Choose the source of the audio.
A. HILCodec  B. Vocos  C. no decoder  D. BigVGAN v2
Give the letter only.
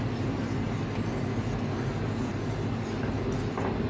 C